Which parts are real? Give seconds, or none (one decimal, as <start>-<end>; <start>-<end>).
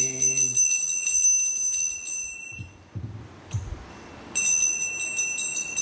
0.0-5.8